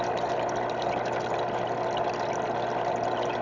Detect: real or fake real